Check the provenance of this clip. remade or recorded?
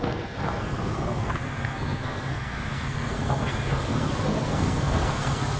remade